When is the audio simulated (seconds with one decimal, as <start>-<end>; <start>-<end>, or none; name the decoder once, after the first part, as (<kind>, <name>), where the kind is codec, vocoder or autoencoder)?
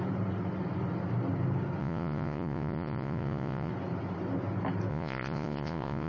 1.8-3.7 (vocoder, Vocos); 4.9-6.1